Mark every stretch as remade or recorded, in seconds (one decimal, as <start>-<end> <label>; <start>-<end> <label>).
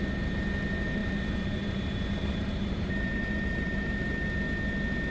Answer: 0.0-1.0 recorded; 1.0-4.1 remade; 4.1-5.1 recorded